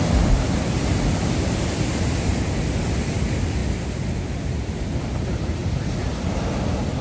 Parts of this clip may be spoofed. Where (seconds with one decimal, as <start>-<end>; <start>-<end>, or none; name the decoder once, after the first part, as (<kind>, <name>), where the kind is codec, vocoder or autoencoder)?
none